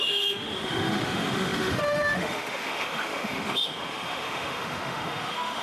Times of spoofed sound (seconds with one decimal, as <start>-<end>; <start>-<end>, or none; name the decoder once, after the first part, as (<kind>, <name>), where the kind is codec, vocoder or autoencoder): 0.0-5.6 (autoencoder, DAC-VAE)